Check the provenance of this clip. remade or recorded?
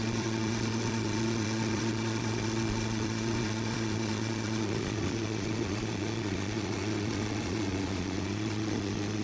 remade